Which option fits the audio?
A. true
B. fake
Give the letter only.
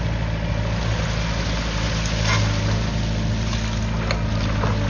A